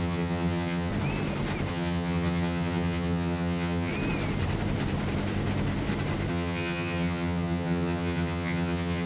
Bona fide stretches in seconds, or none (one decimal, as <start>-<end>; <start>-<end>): 0.9-1.7; 3.9-6.3